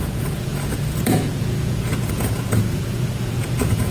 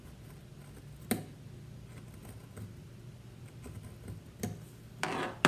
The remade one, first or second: first